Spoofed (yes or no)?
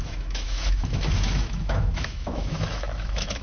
yes